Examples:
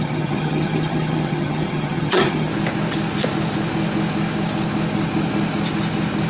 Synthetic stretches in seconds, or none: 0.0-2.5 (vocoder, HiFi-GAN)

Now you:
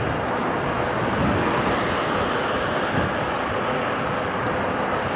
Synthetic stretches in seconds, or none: none

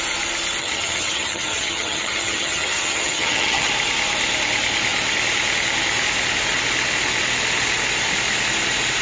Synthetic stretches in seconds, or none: 0.6-3.7 (vocoder, HiFi-GAN)

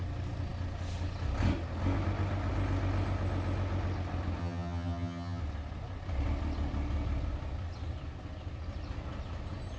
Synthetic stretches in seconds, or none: 4.4-5.4 (vocoder, HiFi-GAN)

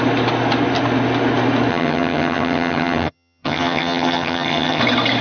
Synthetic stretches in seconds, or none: 1.7-4.8 (vocoder, HiFi-GAN)

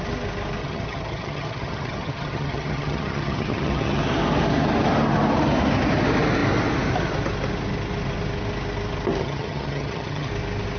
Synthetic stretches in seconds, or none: 0.6-4.0 (vocoder, HiFi-GAN); 9.2-10.3